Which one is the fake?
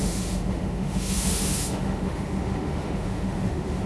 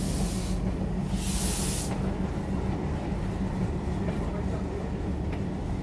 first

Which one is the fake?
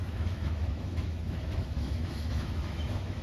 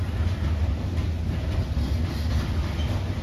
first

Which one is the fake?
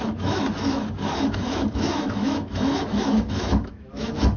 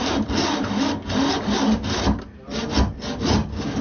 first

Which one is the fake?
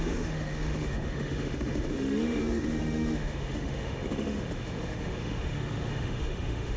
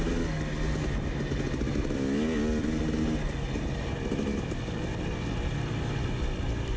first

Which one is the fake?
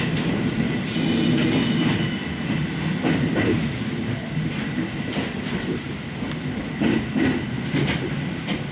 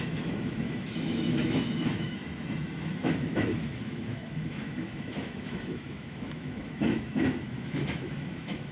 second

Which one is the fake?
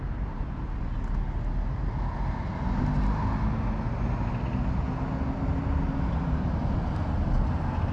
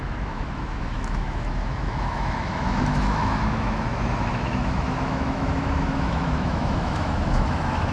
second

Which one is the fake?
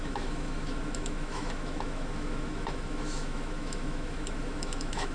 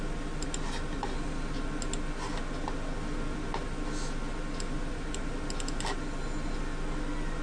first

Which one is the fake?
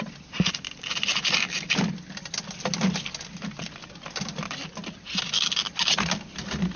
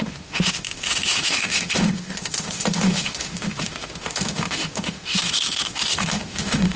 second